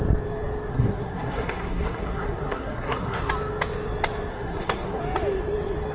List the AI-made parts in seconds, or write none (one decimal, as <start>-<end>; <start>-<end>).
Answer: 0.7-3.3; 4.3-5.0